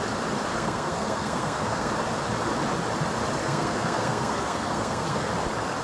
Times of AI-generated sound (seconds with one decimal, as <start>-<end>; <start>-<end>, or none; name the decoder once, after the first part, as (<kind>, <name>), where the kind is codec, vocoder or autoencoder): 0.5-1.9 (codec, SNAC); 3.4-5.3